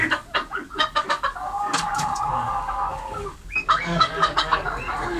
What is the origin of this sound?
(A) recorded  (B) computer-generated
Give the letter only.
B